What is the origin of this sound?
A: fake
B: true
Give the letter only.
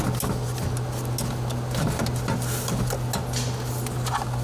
B